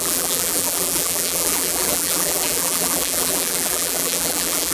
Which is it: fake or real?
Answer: fake